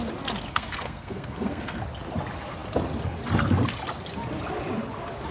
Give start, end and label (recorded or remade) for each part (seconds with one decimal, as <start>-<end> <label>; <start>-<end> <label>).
0.0-0.5 recorded; 0.5-1.8 remade; 1.8-5.3 recorded